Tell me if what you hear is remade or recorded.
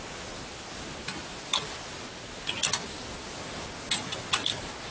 recorded